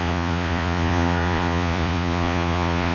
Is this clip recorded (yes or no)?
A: no